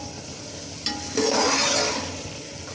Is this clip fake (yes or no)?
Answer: no